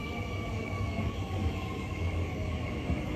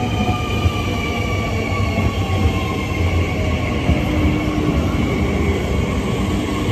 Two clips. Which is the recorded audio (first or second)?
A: second